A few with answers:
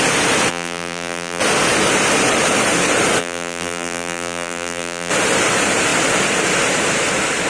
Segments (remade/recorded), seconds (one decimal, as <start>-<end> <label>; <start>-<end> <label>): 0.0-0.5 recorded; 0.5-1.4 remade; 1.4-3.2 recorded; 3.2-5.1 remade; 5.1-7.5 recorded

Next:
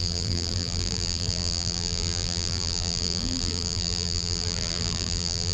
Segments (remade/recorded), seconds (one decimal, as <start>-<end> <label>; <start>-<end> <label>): 0.0-5.5 remade

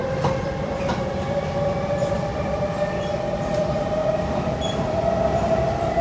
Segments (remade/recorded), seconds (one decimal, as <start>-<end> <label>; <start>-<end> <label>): 0.0-3.6 remade; 3.6-4.0 recorded; 4.0-5.1 remade; 5.1-6.0 recorded

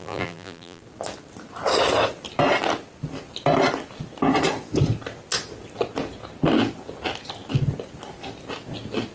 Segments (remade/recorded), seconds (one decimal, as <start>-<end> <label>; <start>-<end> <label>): 0.0-0.8 remade; 0.8-9.1 recorded

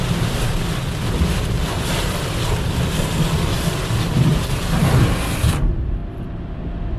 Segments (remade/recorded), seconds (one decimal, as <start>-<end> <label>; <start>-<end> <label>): 0.0-0.9 recorded; 0.9-5.0 remade; 5.0-7.0 recorded

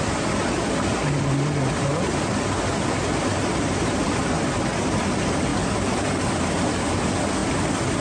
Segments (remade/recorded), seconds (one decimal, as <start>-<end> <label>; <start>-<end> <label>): 0.0-3.3 recorded; 3.3-4.7 remade; 4.7-5.5 recorded; 5.5-6.8 remade; 6.8-7.4 recorded; 7.4-8.0 remade

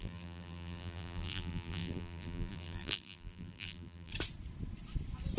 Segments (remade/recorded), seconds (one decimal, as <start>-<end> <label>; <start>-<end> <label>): 0.0-4.1 remade; 4.1-5.4 recorded